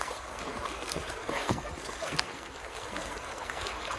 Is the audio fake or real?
fake